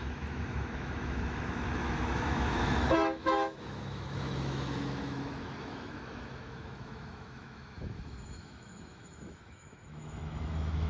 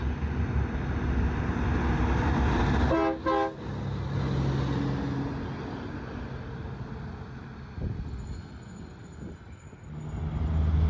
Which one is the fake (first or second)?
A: first